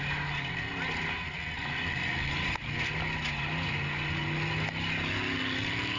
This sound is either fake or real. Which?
real